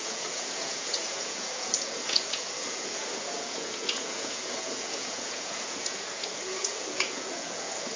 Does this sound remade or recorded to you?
remade